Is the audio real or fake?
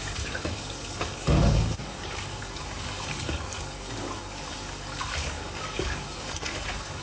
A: fake